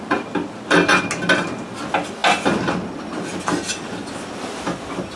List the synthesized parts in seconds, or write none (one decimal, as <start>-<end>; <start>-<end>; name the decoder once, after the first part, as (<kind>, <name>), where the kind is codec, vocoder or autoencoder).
none